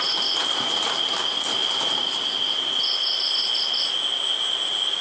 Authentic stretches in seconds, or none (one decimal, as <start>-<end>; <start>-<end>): 0.0-5.0

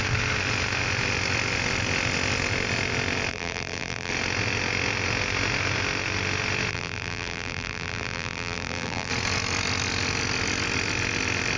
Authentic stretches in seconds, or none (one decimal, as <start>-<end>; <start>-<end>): 0.0-3.3; 4.1-6.7; 9.1-11.6

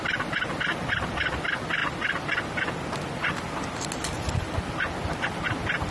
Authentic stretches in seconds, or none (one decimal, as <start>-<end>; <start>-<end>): 0.0-5.9

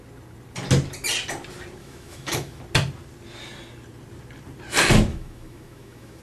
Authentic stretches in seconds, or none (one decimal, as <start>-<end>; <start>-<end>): 0.0-1.8; 2.6-5.1

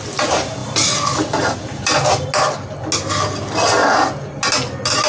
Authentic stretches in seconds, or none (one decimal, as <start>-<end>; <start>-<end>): 0.0-0.6; 2.3-3.8; 4.4-5.1

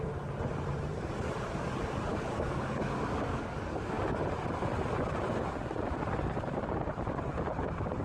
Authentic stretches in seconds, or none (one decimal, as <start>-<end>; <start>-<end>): 0.0-2.1; 4.2-8.0

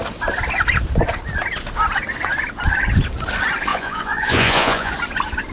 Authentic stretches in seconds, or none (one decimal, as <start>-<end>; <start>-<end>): 0.0-3.7; 4.9-5.5